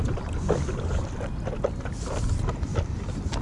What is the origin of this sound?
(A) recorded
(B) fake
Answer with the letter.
A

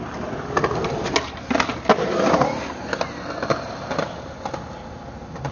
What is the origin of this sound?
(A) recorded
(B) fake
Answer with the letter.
A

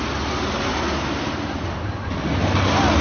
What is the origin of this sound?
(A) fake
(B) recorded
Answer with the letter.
B